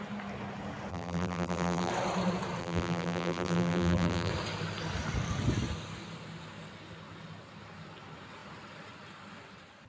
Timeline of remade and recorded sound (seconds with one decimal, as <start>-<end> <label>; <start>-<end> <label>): 0.0-0.9 recorded; 0.9-1.9 remade; 1.9-2.6 recorded; 2.6-4.3 remade; 4.3-9.9 recorded